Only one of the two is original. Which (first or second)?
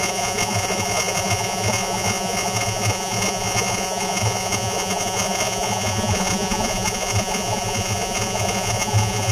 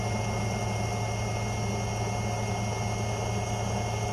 second